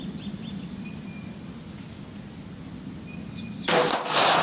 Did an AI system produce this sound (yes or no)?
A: no